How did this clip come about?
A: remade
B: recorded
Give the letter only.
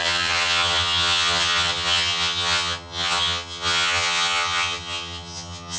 A